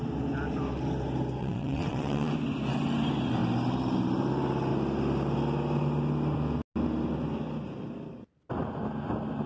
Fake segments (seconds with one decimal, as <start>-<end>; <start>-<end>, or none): 1.4-2.3

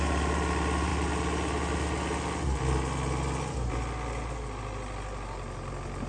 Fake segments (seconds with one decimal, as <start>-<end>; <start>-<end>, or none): none

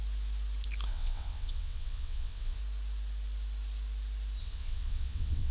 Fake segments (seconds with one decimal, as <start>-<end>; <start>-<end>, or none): 0.9-2.6; 4.4-5.5

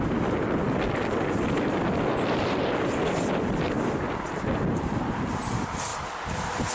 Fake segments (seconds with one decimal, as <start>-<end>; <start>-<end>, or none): none

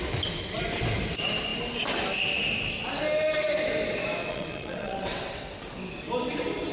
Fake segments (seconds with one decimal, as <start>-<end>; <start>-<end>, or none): 4.2-5.4

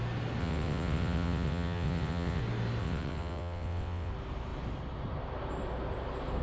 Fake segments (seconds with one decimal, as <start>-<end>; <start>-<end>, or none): 0.4-2.4; 2.8-4.1